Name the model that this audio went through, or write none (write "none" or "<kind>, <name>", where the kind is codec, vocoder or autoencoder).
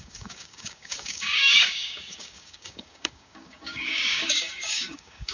codec, DAC